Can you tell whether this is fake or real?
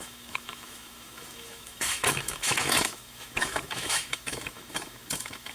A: fake